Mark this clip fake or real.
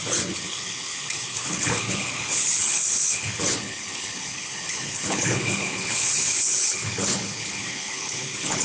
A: fake